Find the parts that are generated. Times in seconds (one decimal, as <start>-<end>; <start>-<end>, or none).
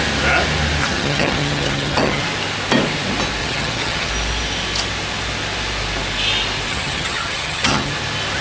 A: 0.8-2.2; 3.4-4.1; 6.7-7.9